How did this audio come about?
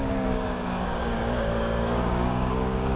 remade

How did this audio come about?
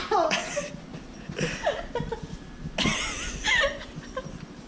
recorded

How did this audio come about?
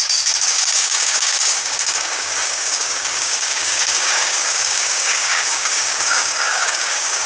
remade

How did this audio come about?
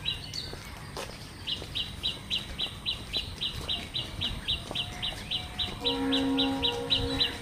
recorded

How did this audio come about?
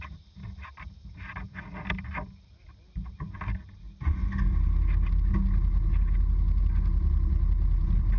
recorded